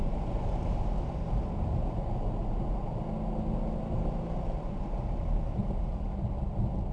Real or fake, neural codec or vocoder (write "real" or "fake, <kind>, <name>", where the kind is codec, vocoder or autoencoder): real